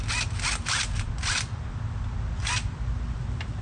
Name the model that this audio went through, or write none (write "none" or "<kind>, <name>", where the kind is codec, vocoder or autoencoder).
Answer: none